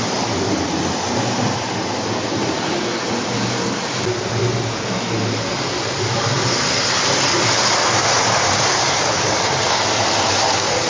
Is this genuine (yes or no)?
yes